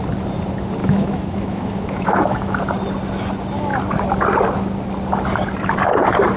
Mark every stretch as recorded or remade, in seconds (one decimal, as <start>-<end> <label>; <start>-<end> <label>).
0.0-0.8 recorded; 0.8-2.6 remade; 2.6-6.4 recorded